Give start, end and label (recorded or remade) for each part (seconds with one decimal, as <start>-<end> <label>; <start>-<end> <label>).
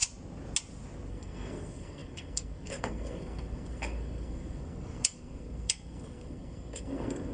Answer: 0.0-1.1 recorded; 1.1-7.3 remade